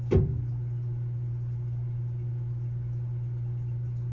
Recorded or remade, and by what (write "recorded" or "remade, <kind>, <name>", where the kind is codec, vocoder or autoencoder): remade, vocoder, BigVGAN v2